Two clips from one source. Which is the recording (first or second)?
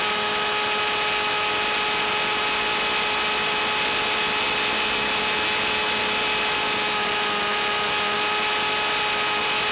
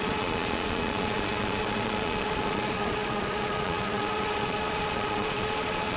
first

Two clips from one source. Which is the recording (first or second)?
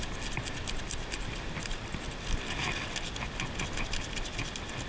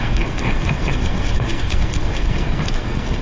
first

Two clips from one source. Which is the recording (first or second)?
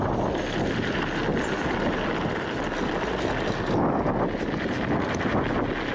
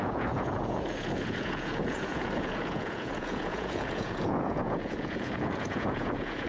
first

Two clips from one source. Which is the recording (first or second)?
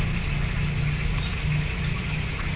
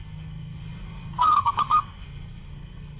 first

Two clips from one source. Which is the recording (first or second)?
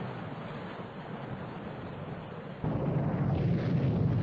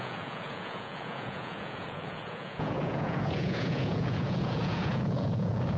first